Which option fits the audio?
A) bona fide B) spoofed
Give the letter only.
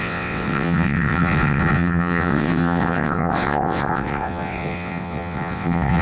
B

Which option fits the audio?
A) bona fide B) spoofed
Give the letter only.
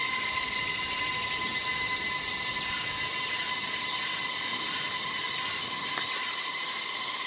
A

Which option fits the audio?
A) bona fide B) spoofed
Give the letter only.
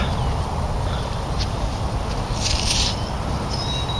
A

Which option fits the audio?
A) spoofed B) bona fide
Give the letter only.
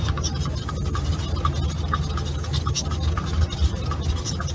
B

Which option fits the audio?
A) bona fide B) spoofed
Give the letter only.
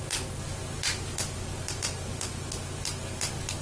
A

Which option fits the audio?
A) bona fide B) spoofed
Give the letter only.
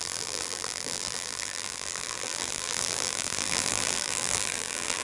B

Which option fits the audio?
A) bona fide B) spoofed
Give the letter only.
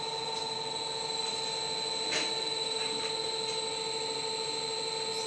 A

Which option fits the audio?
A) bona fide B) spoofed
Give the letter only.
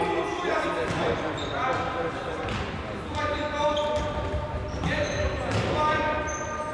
A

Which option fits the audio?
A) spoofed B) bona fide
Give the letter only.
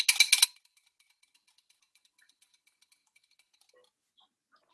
B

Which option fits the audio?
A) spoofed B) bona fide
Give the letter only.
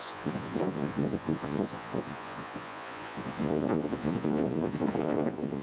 A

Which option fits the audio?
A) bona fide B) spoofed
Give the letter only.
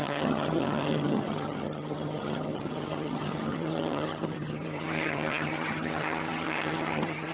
B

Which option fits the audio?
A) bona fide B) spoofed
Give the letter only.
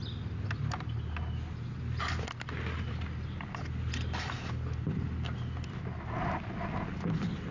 A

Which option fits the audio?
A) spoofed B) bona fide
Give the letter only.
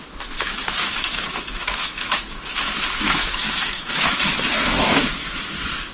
A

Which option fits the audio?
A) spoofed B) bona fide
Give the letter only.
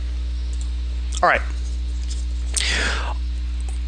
B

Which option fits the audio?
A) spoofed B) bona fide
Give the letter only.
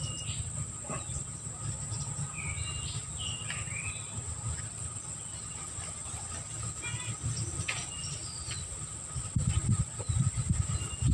B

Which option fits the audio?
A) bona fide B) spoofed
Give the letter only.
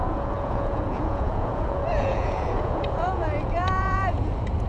B